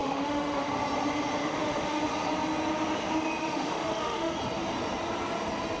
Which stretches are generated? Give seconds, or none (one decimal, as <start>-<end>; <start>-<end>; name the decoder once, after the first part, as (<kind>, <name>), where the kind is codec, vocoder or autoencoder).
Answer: 0.0-0.7 (autoencoder, DAC-VAE); 1.4-2.0; 3.4-4.3